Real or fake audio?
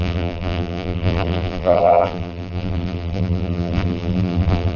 fake